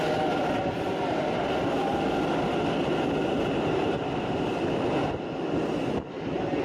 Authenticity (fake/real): real